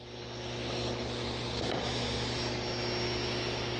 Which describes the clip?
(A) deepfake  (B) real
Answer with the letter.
B